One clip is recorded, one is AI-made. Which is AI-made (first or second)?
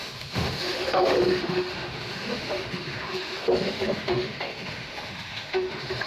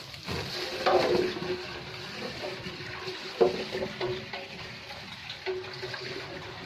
first